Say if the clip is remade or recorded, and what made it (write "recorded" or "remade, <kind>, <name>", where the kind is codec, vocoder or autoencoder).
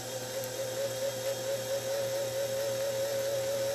recorded